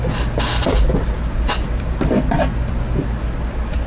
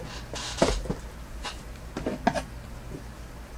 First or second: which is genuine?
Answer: second